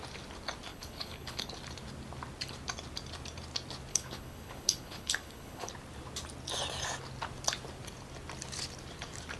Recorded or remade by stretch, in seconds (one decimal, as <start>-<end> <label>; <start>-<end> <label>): 0.0-0.7 recorded; 0.7-1.5 remade; 1.5-3.9 recorded; 3.9-5.7 remade; 5.7-9.4 recorded